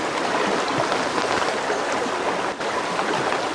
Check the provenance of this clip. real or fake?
real